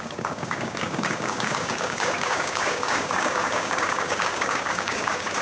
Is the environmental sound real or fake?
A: fake